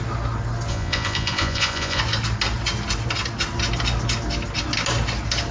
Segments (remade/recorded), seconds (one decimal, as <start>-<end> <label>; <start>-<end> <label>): 0.0-0.7 recorded; 0.7-2.0 remade; 2.0-5.5 recorded